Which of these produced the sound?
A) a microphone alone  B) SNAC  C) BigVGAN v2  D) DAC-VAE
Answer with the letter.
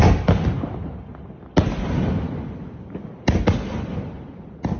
A